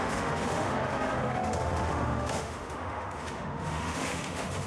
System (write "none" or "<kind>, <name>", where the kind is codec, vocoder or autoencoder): autoencoder, DAC-VAE